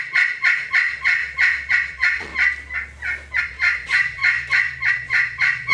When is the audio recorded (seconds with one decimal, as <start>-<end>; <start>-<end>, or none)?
1.2-1.7; 2.3-3.4; 4.2-4.9